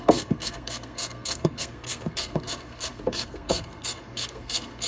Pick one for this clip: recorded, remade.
remade